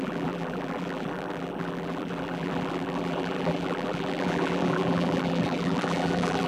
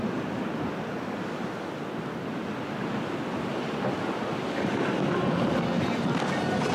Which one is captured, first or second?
second